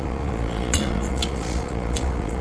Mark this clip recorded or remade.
remade